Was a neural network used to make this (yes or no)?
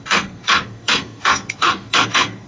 yes